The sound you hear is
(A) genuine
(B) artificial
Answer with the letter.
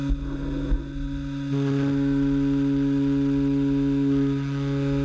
A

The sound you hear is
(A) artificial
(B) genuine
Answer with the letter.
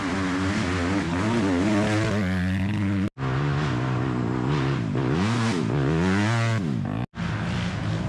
B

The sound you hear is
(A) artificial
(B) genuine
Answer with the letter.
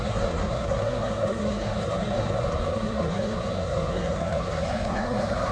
A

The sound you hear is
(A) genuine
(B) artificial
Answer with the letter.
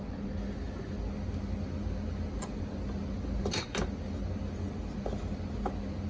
A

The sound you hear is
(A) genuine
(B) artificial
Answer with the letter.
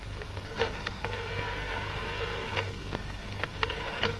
B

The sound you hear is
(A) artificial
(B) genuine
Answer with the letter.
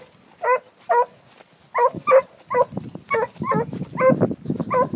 B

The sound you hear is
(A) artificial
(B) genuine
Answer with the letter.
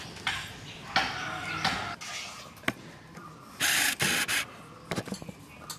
B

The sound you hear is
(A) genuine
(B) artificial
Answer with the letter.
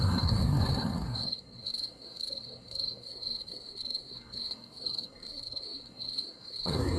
B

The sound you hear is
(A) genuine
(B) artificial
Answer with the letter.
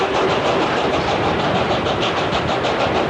A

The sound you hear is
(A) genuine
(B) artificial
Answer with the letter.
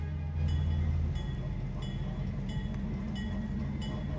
A